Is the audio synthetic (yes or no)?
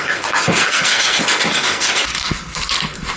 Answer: yes